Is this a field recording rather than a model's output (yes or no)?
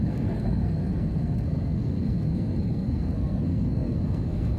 no